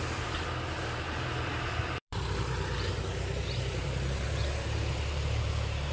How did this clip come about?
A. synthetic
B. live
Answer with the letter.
A